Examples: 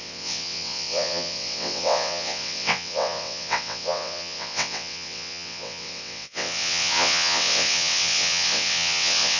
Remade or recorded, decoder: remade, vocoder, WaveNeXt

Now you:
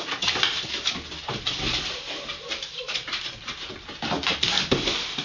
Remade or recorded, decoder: recorded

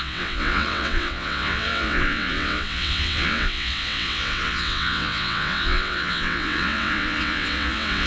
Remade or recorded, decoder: remade, vocoder, WaveNeXt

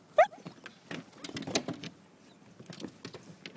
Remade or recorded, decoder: recorded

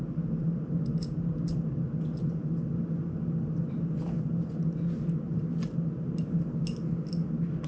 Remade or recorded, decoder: recorded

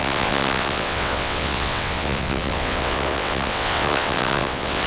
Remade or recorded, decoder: remade, vocoder, WaveNeXt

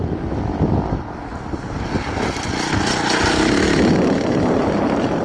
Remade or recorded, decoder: recorded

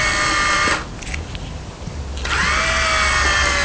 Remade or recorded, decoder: recorded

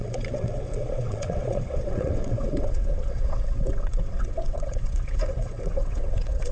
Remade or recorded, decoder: remade, vocoder, WaveNeXt